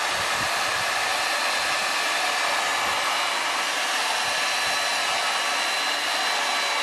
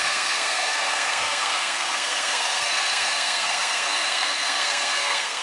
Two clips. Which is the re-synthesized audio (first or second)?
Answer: second